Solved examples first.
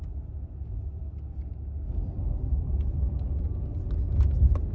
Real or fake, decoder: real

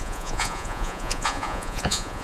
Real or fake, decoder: fake, vocoder, Vocos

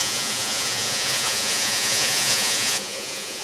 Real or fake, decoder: fake, vocoder, Vocos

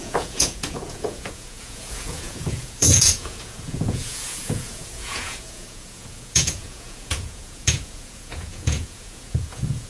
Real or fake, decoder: fake, vocoder, Vocos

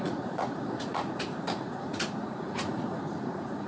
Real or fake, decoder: fake, vocoder, Vocos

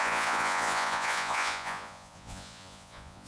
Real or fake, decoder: fake, vocoder, Vocos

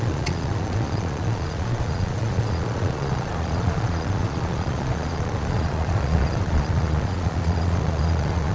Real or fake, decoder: fake, vocoder, Vocos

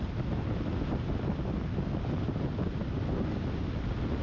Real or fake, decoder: real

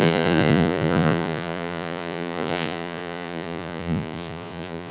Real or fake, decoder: fake, vocoder, Vocos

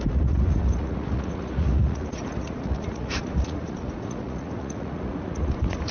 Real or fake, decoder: fake, vocoder, Vocos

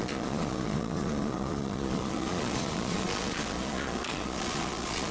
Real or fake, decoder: fake, vocoder, Vocos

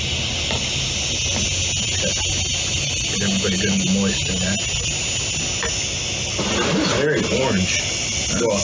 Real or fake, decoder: real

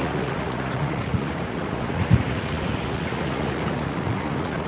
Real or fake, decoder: fake, vocoder, Vocos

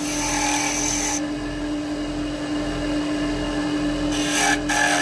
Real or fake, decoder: real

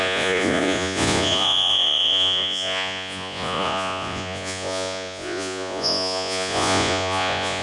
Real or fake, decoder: fake, vocoder, Vocos